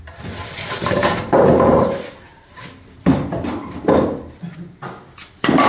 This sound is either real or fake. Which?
real